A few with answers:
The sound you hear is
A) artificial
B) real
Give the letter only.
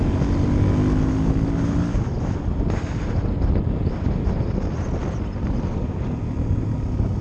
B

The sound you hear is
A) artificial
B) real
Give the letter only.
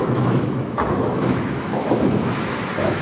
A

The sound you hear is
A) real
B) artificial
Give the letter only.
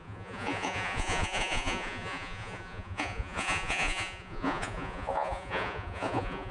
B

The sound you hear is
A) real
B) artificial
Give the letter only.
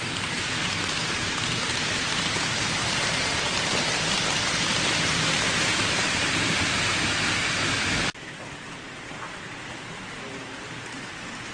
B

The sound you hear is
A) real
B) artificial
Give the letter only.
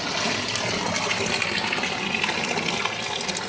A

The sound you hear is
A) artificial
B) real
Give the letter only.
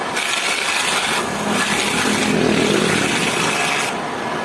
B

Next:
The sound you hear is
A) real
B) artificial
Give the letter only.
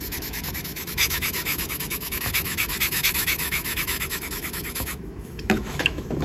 B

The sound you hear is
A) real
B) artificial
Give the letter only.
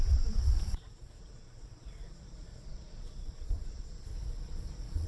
B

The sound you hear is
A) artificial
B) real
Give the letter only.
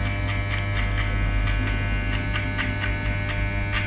B